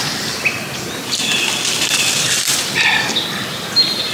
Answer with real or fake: real